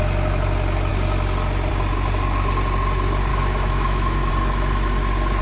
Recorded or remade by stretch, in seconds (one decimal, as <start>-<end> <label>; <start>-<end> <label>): 0.0-3.3 recorded; 3.3-4.3 remade; 4.3-5.4 recorded